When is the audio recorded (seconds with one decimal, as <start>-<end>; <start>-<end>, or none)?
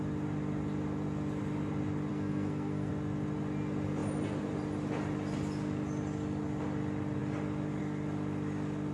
0.0-2.1; 2.9-8.9